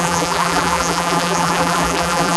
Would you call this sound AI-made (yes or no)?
yes